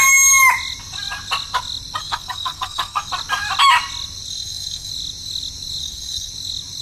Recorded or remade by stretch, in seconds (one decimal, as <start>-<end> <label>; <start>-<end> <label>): 0.0-2.0 recorded; 2.0-3.1 remade; 3.1-4.3 recorded; 4.3-4.9 remade; 4.9-5.8 recorded; 5.8-6.3 remade; 6.3-6.8 recorded